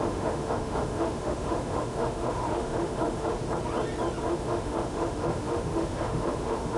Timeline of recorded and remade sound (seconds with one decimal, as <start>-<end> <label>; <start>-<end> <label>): 0.0-3.4 remade; 3.4-4.3 recorded; 4.3-6.8 remade